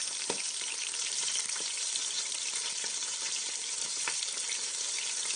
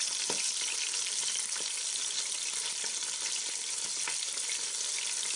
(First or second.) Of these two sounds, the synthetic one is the first